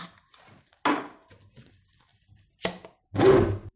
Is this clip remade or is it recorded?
recorded